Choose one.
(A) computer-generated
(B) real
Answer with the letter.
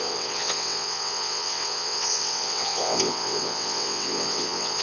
A